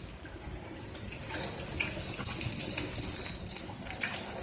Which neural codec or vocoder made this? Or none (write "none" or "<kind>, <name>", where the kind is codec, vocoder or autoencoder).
none